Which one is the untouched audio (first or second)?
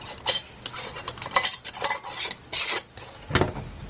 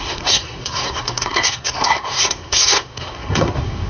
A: first